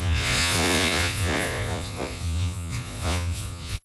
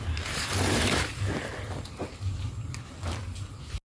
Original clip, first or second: second